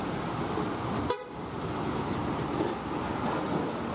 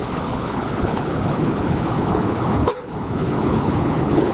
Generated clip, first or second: second